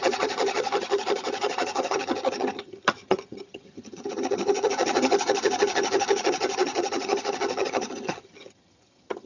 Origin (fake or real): fake